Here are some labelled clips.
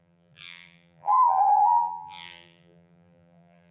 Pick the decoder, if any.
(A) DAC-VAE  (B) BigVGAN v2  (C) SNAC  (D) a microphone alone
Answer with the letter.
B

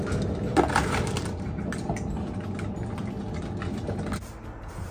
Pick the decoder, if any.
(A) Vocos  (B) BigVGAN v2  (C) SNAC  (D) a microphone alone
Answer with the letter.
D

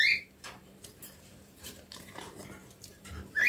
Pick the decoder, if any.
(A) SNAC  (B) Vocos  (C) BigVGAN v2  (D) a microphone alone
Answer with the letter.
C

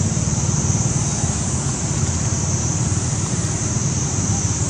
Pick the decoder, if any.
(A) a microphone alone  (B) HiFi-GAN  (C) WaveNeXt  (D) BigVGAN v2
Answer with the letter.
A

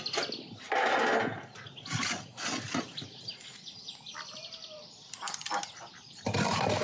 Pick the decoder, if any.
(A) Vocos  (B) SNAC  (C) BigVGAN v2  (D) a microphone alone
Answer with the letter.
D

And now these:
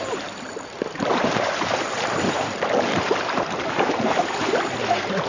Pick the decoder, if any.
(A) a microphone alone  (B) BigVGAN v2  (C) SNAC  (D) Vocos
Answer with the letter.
B